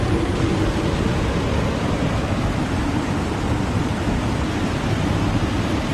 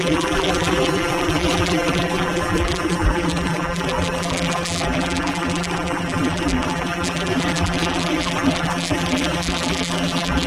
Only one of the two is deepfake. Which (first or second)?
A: second